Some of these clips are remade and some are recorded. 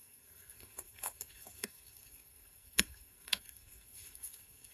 remade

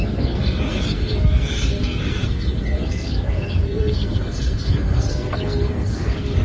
remade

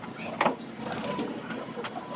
recorded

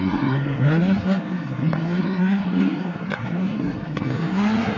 remade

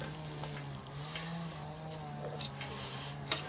recorded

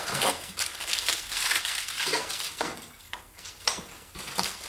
remade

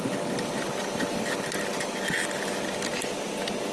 recorded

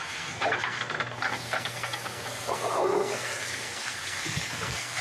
remade